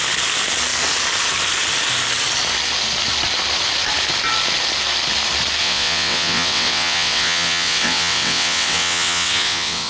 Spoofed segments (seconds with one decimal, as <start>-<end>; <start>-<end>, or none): 5.6-9.9